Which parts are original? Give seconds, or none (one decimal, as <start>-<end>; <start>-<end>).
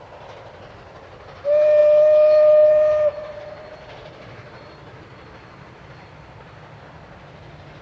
0.0-7.8